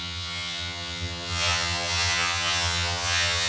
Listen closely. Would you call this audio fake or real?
fake